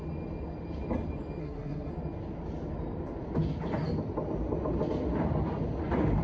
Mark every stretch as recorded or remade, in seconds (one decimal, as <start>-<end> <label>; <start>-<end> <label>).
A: 0.0-1.4 recorded; 1.4-1.9 remade; 1.9-6.2 recorded